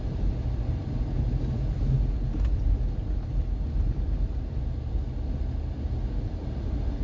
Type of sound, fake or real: real